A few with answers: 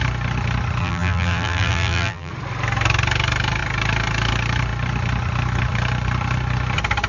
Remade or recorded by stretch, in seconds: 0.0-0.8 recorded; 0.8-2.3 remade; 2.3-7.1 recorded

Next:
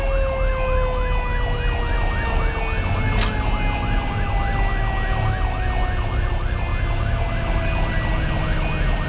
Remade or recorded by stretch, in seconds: 0.0-9.1 recorded

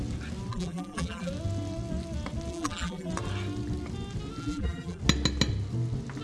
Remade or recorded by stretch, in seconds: 0.0-0.5 recorded; 0.5-1.3 remade; 1.3-2.5 recorded; 2.5-3.1 remade; 3.1-4.4 recorded; 4.4-5.0 remade; 5.0-6.2 recorded

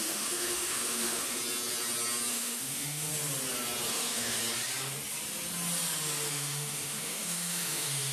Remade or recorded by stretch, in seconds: 0.0-1.4 remade; 1.4-2.3 recorded; 2.3-3.1 remade; 3.1-3.9 recorded; 3.9-4.4 remade; 4.4-6.3 recorded; 6.3-8.1 remade